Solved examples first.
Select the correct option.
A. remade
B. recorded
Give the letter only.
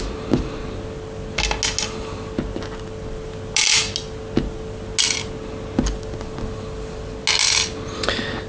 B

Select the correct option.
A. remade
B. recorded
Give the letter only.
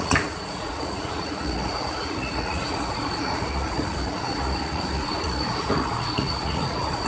A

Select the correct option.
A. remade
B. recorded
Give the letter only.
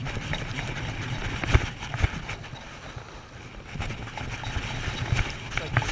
B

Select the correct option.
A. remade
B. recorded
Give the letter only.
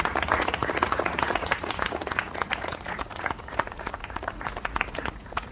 A